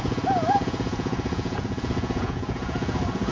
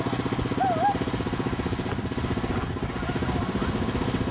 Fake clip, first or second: first